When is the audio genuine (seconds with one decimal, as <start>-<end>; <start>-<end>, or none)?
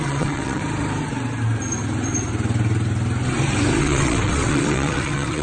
0.6-3.8